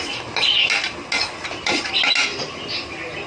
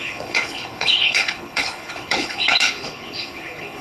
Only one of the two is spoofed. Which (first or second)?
second